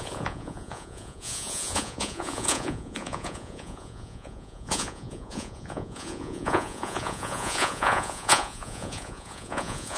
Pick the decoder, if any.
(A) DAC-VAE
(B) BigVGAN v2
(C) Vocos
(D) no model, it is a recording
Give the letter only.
C